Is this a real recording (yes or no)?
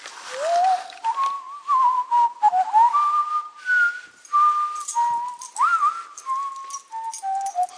yes